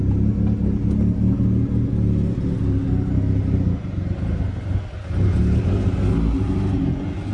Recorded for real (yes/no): yes